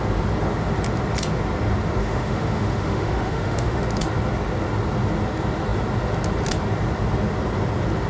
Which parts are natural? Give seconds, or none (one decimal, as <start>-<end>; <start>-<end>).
0.0-2.0; 3.8-8.1